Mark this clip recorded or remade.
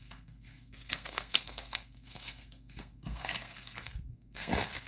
remade